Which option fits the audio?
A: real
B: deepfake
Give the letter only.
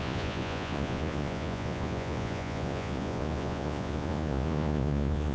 B